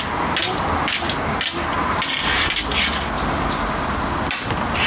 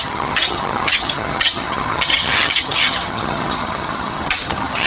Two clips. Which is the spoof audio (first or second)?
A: second